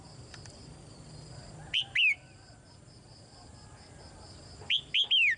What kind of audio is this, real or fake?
real